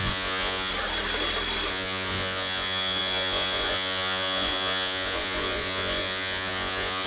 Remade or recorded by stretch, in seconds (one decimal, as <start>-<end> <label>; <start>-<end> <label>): 0.0-0.7 remade; 0.7-1.7 recorded; 1.7-7.1 remade